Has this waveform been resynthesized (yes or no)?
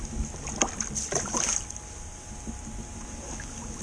no